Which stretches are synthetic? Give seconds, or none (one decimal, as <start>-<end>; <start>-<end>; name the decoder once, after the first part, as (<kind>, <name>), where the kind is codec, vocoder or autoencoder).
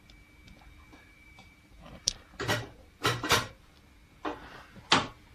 0.9-3.5 (vocoder, BigVGAN v2)